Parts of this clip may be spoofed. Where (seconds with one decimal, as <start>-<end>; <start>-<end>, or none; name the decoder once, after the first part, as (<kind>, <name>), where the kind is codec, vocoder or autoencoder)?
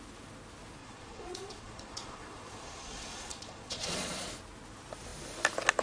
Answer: 0.8-4.3 (vocoder, Vocos)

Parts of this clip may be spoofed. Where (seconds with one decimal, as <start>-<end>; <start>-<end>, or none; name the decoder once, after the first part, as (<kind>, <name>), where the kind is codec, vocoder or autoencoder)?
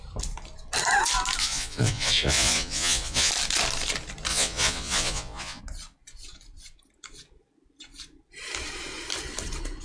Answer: 1.4-3.3 (vocoder, Vocos); 4.3-5.6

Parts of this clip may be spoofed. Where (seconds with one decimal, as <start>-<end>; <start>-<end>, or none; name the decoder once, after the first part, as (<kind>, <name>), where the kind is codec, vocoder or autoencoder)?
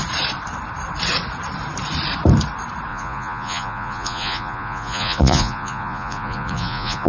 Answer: 2.9-7.1 (vocoder, Vocos)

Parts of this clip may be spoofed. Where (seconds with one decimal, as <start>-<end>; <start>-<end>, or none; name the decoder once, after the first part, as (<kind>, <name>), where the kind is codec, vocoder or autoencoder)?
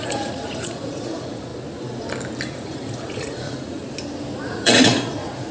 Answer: 0.0-1.5 (vocoder, Vocos); 2.5-3.8; 4.5-5.5